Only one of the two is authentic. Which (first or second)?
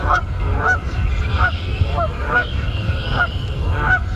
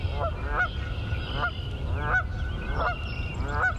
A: second